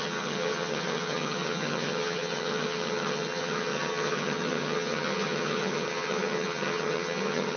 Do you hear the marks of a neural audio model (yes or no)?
yes